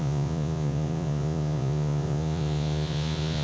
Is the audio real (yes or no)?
no